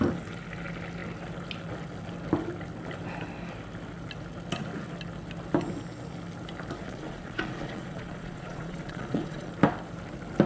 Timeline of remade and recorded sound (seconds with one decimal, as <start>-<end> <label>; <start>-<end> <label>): 0.0-6.8 recorded; 6.8-9.5 remade; 9.5-10.5 recorded